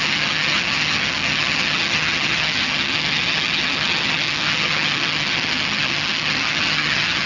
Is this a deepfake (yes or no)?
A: yes